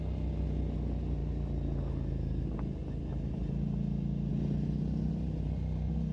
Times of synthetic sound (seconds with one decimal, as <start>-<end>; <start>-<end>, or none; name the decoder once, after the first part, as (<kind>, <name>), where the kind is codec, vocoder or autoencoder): none